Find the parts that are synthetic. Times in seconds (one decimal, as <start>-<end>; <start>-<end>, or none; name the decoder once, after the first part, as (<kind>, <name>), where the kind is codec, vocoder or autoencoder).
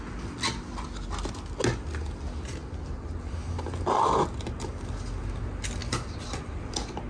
5.8-6.6 (vocoder, BigVGAN v2)